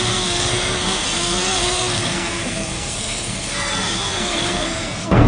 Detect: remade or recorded remade